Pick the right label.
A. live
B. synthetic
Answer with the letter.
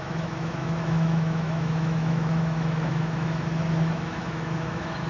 B